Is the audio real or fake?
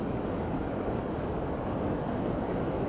fake